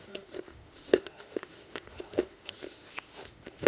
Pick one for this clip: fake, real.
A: fake